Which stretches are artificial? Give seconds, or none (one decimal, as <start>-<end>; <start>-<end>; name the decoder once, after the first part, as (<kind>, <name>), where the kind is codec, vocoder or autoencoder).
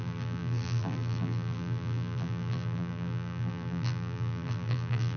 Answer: 0.0-5.2 (vocoder, BigVGAN v2)